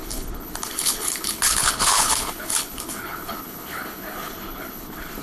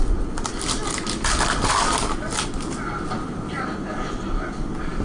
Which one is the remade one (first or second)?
first